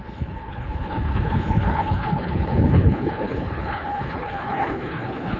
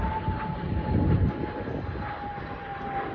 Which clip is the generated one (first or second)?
first